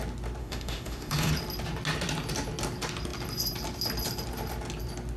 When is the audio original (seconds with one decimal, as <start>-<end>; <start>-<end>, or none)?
0.0-0.4; 1.3-5.2